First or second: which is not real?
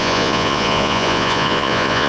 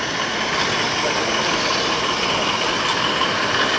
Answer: first